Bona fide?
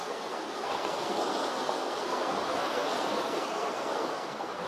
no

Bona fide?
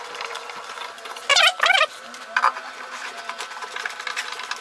yes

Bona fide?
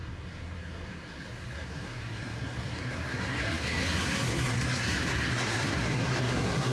no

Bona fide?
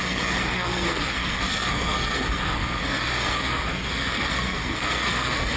no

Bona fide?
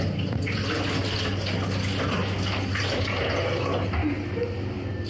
yes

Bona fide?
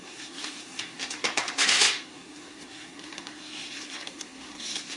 no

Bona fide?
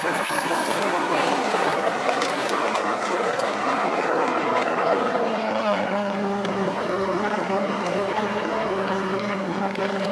no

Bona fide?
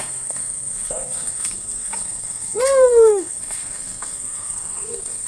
no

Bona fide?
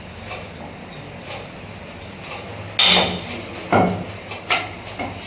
yes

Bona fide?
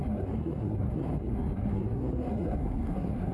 no